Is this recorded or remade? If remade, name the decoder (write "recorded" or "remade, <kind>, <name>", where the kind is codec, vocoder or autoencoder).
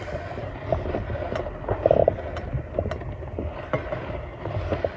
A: recorded